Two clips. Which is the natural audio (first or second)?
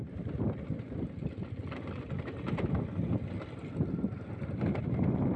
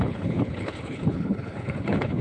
first